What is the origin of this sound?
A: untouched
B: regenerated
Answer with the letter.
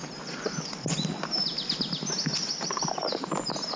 A